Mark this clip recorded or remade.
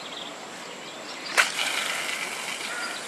recorded